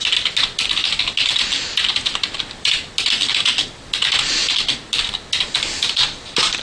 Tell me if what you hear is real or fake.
real